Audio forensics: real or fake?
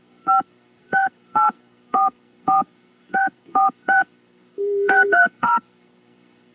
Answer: fake